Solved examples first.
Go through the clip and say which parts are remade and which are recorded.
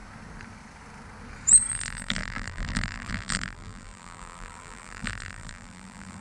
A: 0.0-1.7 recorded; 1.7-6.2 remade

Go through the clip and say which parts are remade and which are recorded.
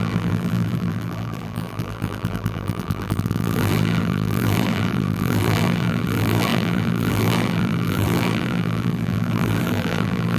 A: 0.0-10.4 remade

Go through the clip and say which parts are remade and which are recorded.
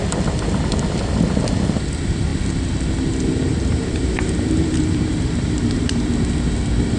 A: 0.0-3.5 recorded; 3.5-6.1 remade; 6.1-7.0 recorded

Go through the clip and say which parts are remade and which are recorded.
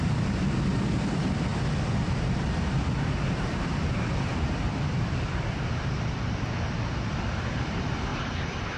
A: 0.0-8.1 remade; 8.1-8.8 recorded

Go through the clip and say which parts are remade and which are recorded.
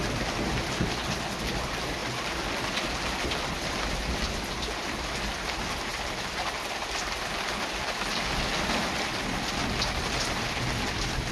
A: 0.0-11.3 recorded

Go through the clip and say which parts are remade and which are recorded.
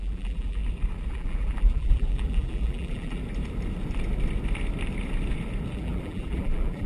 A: 0.0-0.6 remade; 0.6-1.1 recorded; 1.1-3.2 remade; 3.2-5.7 recorded; 5.7-6.9 remade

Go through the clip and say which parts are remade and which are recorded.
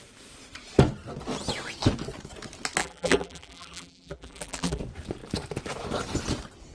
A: 0.0-2.8 recorded; 2.8-4.8 remade; 4.8-6.7 recorded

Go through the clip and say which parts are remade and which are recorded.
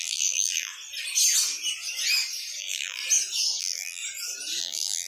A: 0.0-0.7 remade; 0.7-2.6 recorded; 2.6-3.0 remade; 3.0-3.6 recorded; 3.6-4.0 remade; 4.0-4.6 recorded; 4.6-5.1 remade